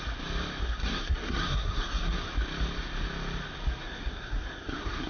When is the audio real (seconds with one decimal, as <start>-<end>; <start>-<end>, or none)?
0.0-0.6; 2.3-3.8